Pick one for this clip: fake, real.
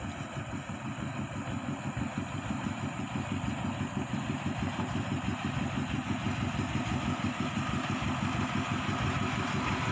real